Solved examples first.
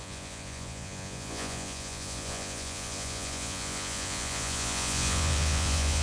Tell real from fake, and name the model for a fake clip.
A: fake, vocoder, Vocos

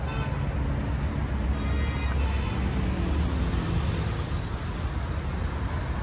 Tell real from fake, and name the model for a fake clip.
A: real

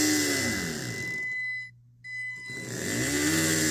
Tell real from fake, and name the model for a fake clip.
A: real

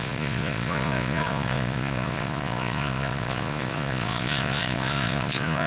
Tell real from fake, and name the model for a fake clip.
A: fake, vocoder, Vocos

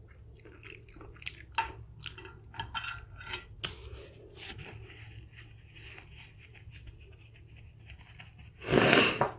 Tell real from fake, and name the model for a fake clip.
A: real